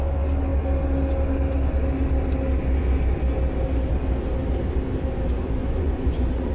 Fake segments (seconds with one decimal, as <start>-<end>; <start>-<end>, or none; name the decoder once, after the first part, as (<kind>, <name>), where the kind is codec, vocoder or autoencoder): 5.6-6.5 (vocoder, Vocos)